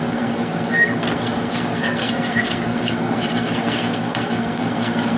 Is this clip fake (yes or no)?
yes